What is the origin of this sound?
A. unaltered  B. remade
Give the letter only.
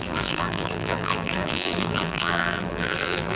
B